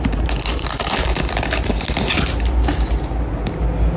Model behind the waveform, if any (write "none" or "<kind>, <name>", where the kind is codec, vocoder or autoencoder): none